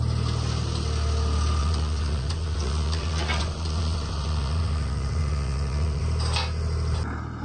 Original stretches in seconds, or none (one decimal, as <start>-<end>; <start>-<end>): 0.0-1.6; 6.0-7.4